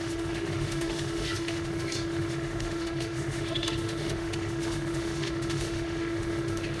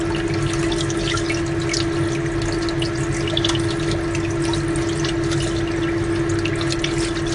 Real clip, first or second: second